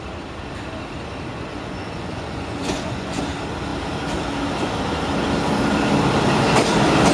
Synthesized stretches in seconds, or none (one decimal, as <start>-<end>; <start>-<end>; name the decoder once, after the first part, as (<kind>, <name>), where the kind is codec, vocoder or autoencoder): 1.3-3.2 (vocoder, Vocos)